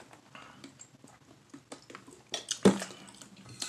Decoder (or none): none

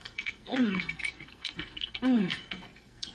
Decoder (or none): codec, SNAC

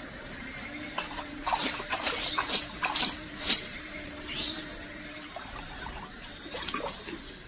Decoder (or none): vocoder, BigVGAN v2